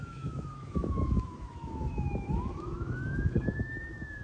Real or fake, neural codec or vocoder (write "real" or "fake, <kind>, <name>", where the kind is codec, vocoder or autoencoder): fake, autoencoder, DAC-VAE